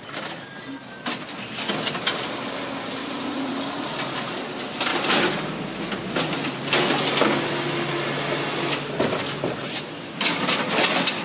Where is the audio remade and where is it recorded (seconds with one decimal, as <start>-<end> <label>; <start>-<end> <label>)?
0.0-3.0 recorded; 3.0-3.5 remade; 3.5-11.2 recorded